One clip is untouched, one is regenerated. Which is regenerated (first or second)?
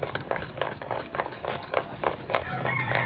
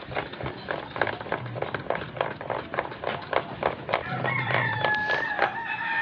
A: first